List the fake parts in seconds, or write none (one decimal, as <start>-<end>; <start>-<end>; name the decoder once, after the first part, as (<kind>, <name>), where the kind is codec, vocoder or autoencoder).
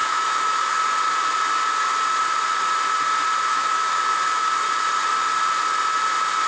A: 0.0-0.8 (autoencoder, DAC-VAE); 3.5-4.5